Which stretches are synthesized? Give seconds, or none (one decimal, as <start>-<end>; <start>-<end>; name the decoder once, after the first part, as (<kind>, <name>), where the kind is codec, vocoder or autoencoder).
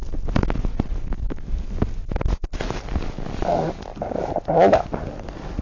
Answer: none